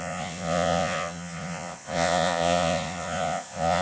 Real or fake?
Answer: fake